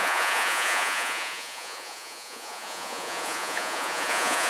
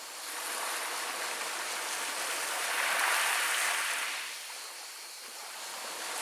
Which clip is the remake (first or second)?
first